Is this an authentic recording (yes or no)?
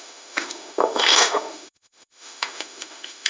no